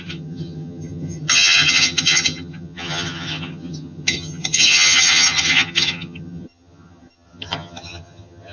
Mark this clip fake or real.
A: fake